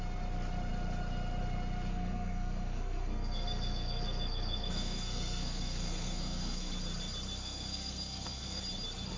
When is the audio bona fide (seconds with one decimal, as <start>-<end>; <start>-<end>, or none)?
0.0-1.9; 6.7-7.4; 8.6-9.2